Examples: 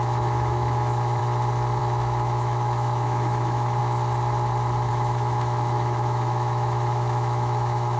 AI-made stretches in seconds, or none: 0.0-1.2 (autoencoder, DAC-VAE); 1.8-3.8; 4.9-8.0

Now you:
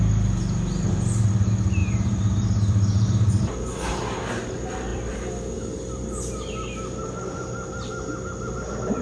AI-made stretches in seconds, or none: 1.8-3.4 (vocoder, BigVGAN v2)

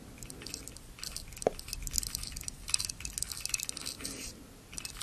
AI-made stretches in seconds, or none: none